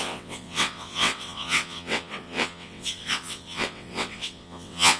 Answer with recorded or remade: remade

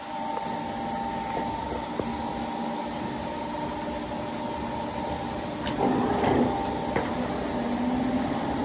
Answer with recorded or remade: recorded